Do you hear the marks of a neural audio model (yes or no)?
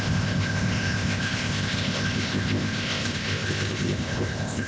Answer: yes